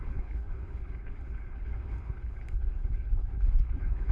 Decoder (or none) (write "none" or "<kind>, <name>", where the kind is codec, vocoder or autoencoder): codec, HILCodec